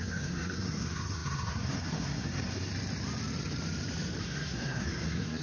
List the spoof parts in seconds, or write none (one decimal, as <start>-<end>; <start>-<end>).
0.0-2.7; 4.2-5.4